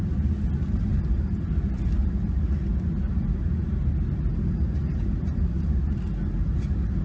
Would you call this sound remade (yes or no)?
no